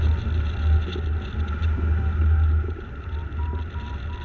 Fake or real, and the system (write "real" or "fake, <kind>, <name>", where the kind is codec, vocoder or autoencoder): real